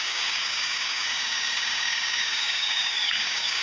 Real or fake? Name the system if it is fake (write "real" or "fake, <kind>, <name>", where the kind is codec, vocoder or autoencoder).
fake, codec, DAC